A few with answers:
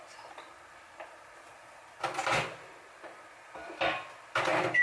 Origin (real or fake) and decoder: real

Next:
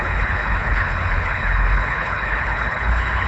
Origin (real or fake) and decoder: fake, codec, HILCodec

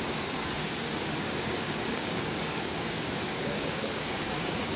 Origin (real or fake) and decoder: fake, codec, DAC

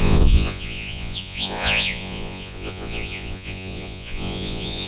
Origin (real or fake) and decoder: fake, vocoder, Vocos